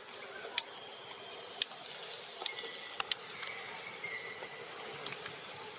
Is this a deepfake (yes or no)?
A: no